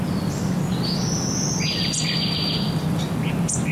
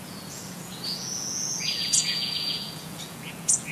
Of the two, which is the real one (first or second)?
first